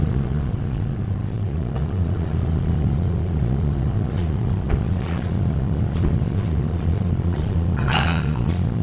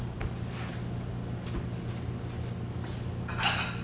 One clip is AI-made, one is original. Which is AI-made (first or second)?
first